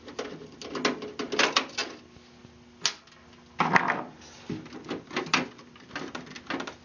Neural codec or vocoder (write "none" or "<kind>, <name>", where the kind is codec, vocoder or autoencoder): none